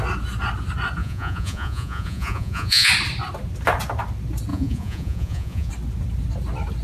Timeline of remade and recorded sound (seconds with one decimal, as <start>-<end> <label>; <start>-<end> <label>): 0.0-1.0 recorded; 1.0-2.9 remade; 2.9-4.5 recorded; 4.5-5.7 remade; 5.7-6.8 recorded